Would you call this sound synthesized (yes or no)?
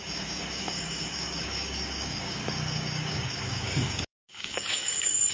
yes